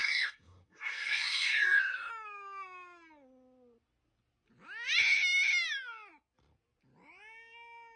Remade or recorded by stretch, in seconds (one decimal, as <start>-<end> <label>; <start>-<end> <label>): 0.0-2.1 remade; 2.1-8.0 recorded